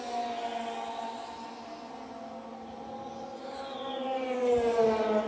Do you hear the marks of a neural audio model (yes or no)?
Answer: no